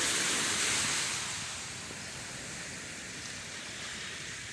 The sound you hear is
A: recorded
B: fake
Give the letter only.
A